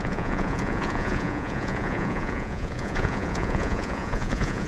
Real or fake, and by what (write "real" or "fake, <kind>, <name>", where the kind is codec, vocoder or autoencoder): fake, vocoder, Vocos